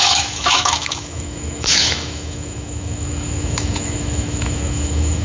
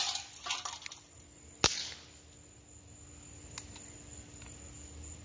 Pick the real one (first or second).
second